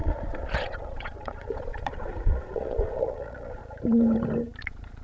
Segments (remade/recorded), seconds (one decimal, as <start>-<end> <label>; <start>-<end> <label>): 0.0-3.6 remade; 3.6-4.6 recorded; 4.6-5.0 remade